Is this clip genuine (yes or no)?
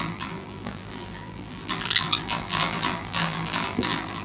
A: no